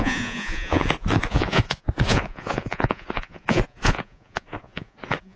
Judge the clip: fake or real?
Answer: fake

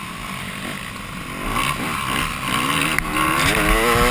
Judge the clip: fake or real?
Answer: real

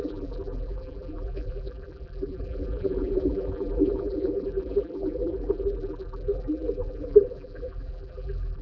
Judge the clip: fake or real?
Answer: fake